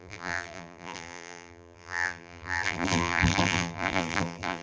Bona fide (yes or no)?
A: no